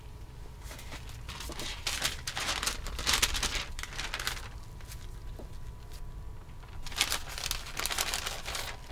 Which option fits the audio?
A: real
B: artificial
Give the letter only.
A